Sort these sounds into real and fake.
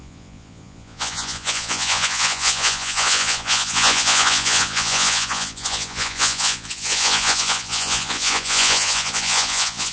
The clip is fake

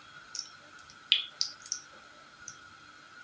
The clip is real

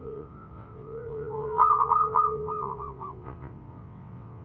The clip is fake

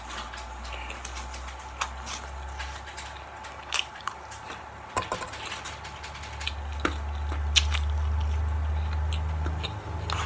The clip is real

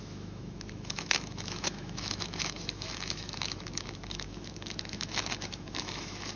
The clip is fake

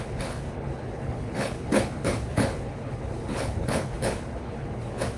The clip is fake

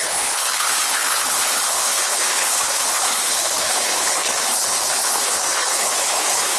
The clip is fake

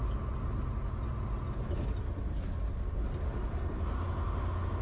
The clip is real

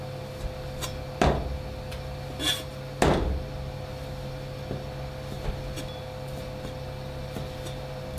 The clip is real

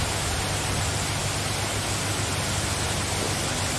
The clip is real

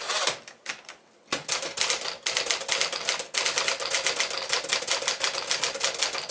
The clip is real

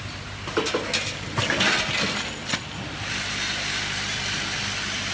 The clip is real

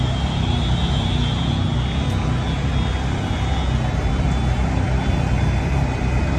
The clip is real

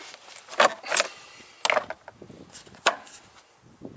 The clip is real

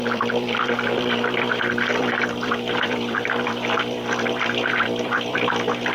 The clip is fake